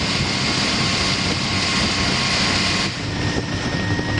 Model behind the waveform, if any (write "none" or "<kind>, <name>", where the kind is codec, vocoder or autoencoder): none